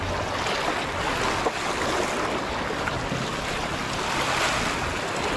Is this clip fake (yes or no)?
no